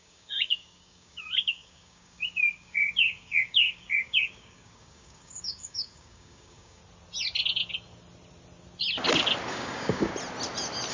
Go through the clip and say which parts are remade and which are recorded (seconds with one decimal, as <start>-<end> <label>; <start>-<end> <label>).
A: 0.0-6.8 remade; 6.8-9.5 recorded; 9.5-10.1 remade; 10.1-10.9 recorded